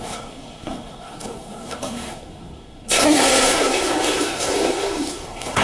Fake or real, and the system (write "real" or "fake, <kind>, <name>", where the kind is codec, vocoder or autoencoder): fake, codec, SNAC